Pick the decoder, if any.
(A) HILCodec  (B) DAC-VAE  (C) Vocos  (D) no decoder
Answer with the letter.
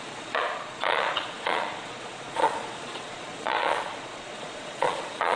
C